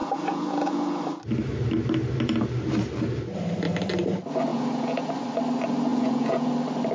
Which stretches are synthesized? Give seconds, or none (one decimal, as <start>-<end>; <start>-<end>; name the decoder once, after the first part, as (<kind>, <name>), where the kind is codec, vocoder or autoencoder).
0.0-1.0 (vocoder, Vocos); 4.5-5.1; 5.9-6.5